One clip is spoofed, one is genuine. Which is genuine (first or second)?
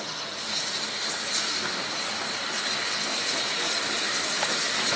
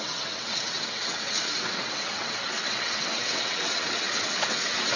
first